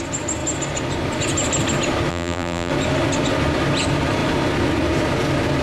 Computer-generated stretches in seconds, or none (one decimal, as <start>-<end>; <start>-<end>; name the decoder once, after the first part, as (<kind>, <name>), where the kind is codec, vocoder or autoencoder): 2.1-2.7 (vocoder, BigVGAN v2)